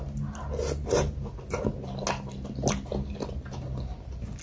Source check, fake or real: real